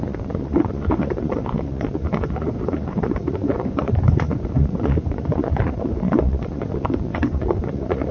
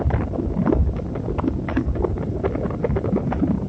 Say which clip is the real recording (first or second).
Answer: second